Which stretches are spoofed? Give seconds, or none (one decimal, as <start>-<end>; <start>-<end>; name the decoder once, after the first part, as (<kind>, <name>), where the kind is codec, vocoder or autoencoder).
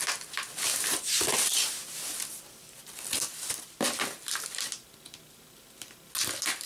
none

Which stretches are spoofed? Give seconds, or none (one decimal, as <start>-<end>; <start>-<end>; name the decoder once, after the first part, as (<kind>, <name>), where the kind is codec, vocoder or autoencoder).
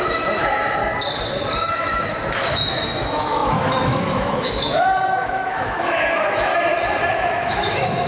0.0-0.8 (autoencoder, DAC-VAE); 1.7-2.1; 2.7-6.5; 7.1-8.1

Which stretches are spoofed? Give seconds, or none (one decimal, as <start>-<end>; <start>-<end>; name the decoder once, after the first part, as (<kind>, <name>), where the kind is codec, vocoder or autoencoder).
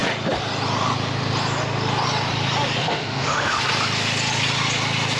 2.8-3.6 (autoencoder, DAC-VAE)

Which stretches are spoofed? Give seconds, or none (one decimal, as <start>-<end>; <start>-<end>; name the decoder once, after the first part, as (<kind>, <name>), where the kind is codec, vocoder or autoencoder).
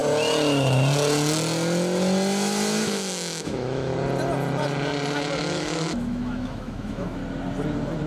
2.8-3.9 (autoencoder, DAC-VAE); 5.4-7.2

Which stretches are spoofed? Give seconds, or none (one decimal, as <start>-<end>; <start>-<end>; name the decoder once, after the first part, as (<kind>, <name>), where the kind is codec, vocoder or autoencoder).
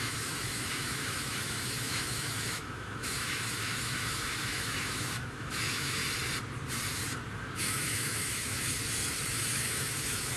0.0-6.0 (autoencoder, DAC-VAE); 7.6-8.8; 9.3-10.4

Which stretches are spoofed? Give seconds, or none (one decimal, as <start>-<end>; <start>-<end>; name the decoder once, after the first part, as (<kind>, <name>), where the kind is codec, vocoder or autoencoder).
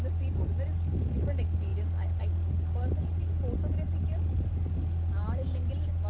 none